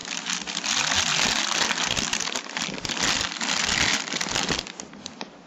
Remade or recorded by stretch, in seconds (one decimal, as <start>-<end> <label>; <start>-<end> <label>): 0.0-5.5 recorded